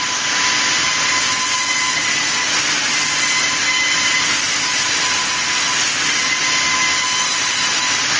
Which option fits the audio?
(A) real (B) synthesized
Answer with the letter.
A